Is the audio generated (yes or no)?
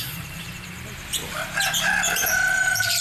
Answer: yes